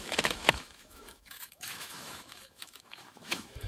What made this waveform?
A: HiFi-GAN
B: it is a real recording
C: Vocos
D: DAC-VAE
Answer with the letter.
D